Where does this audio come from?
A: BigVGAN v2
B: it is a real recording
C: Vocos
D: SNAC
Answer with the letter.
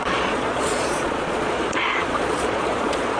C